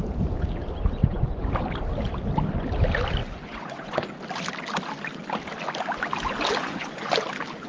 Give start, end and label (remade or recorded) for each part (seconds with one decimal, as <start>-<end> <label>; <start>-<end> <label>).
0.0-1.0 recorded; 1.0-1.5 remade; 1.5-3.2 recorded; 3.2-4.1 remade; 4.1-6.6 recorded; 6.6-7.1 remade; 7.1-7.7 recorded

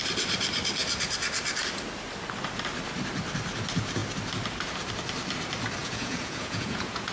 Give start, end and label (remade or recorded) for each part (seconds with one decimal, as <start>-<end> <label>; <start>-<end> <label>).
0.0-5.8 recorded; 5.8-7.1 remade

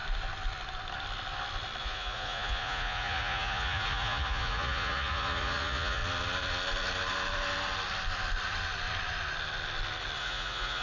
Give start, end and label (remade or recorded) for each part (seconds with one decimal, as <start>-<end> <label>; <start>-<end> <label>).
0.0-1.8 recorded; 1.8-6.0 remade; 6.0-10.2 recorded; 10.2-10.8 remade

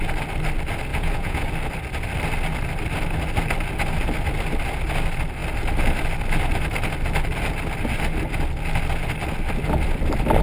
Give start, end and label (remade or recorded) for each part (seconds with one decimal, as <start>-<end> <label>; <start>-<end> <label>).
0.0-0.9 recorded; 0.9-1.5 remade; 1.5-10.4 recorded